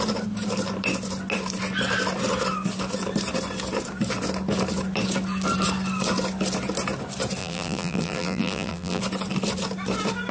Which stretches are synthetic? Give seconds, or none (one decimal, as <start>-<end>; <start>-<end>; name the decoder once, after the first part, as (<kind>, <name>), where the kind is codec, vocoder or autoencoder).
7.4-9.0 (vocoder, BigVGAN v2)